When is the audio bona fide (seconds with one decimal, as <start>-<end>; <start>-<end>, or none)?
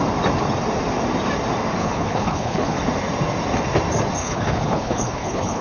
0.0-1.8; 2.8-4.2